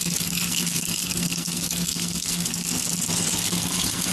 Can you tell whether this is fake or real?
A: fake